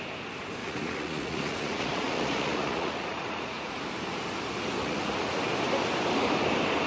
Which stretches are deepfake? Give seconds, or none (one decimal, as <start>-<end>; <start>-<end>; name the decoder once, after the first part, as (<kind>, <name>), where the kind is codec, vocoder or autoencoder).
0.6-3.8 (vocoder, Vocos); 4.8-5.4